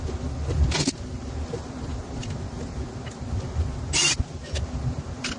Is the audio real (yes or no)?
yes